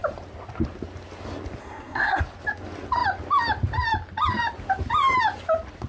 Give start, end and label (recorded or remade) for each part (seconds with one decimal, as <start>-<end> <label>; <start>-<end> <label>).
0.0-1.6 recorded; 1.6-2.2 remade; 2.2-5.9 recorded

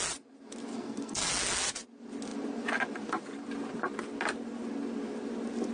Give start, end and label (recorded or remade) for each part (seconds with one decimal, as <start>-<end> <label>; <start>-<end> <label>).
0.0-0.7 recorded; 0.7-1.3 remade; 1.3-5.7 recorded

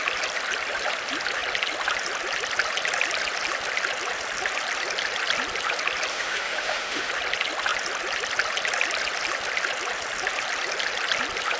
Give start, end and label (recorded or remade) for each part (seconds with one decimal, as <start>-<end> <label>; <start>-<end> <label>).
0.0-6.1 recorded; 6.1-7.1 remade; 7.1-11.6 recorded

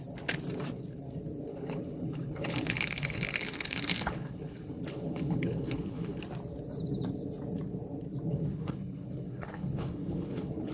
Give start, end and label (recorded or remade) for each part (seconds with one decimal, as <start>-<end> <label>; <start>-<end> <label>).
0.0-1.5 recorded; 1.5-6.2 remade; 6.2-8.3 recorded; 8.3-10.7 remade

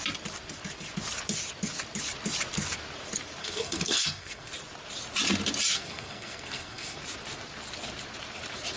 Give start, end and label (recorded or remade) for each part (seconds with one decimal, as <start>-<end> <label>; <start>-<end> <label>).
0.0-3.4 recorded; 3.4-4.5 remade; 4.5-5.7 recorded; 5.7-7.0 remade; 7.0-8.8 recorded